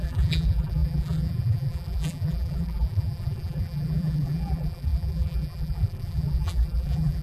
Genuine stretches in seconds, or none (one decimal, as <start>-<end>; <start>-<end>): none